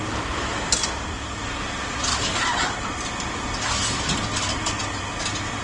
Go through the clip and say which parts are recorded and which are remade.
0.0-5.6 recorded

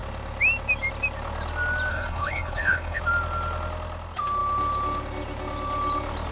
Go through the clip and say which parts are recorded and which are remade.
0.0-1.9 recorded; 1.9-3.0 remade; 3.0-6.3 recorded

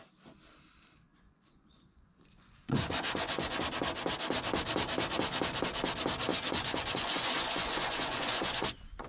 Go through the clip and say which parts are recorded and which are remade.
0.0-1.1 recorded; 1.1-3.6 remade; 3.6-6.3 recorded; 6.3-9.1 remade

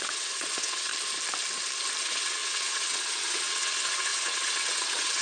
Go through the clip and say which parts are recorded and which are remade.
0.0-0.9 remade; 0.9-2.0 recorded; 2.0-5.2 remade

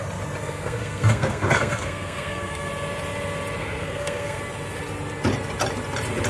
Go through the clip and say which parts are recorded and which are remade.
0.0-0.4 recorded; 0.4-2.7 remade; 2.7-3.6 recorded; 3.6-4.4 remade; 4.4-6.3 recorded

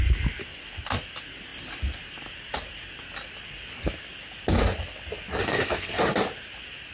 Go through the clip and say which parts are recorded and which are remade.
0.0-5.4 recorded; 5.4-6.0 remade; 6.0-6.9 recorded